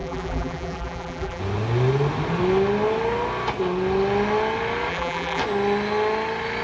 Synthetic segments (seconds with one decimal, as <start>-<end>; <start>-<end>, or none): 0.0-1.4; 4.9-5.4